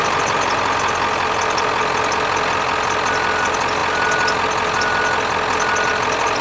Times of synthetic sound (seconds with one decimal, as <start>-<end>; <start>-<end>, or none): none